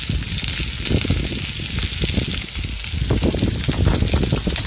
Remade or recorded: recorded